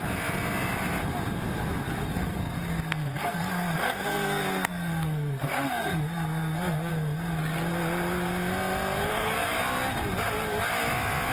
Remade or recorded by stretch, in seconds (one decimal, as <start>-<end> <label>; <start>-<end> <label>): 0.0-2.0 recorded; 2.0-6.9 remade; 6.9-9.1 recorded; 9.1-9.6 remade; 9.6-11.3 recorded